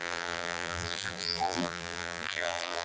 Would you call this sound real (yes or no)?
no